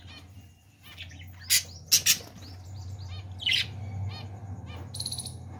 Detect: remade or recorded recorded